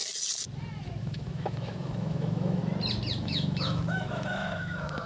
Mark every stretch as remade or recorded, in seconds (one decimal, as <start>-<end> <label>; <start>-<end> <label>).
0.0-1.0 recorded; 1.0-2.6 remade; 2.6-3.2 recorded; 3.2-5.1 remade